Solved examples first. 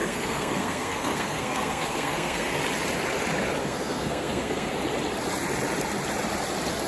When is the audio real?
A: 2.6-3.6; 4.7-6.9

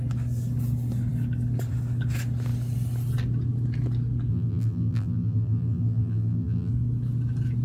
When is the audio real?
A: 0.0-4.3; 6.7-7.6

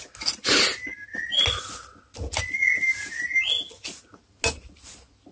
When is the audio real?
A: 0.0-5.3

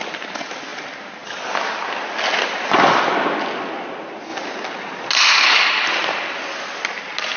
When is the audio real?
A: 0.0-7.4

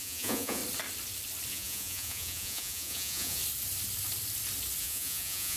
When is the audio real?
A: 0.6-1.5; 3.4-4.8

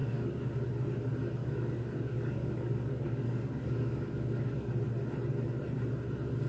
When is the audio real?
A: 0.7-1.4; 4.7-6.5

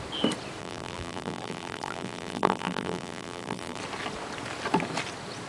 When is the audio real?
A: 0.0-0.6; 3.8-5.5